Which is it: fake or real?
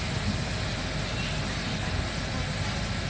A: real